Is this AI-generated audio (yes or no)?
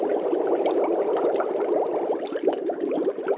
no